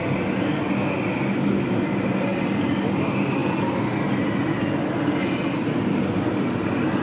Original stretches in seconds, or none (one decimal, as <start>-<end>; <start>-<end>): 0.0-7.0